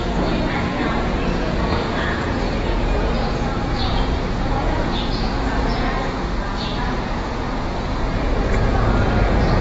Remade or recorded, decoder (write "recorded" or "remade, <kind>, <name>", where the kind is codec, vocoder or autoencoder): remade, vocoder, Vocos